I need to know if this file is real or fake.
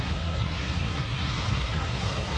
fake